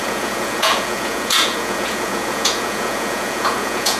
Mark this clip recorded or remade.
remade